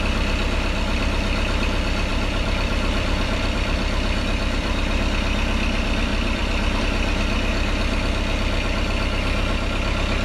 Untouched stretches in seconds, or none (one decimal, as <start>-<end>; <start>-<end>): 0.0-2.1; 5.0-6.1; 6.8-10.2